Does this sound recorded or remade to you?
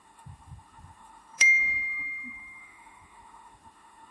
remade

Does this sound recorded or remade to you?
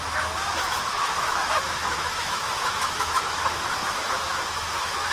remade